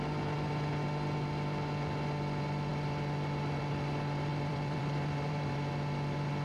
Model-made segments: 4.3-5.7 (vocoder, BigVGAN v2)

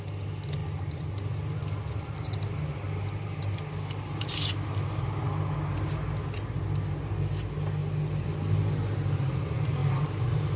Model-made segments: 9.8-10.6 (vocoder, BigVGAN v2)

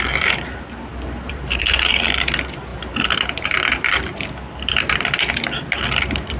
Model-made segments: 0.0-6.4 (vocoder, BigVGAN v2)